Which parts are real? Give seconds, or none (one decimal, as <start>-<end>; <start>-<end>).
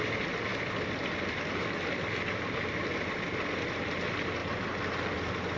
0.5-3.2; 4.4-5.1